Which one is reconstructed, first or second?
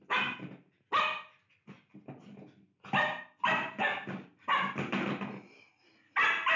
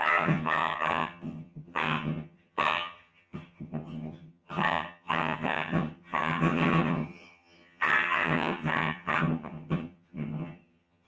second